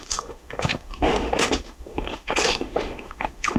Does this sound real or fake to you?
fake